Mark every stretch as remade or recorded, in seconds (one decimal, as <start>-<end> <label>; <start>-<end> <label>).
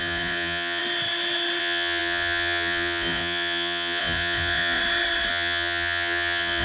0.0-0.8 remade; 0.8-1.6 recorded; 1.6-4.8 remade; 4.8-5.3 recorded; 5.3-6.6 remade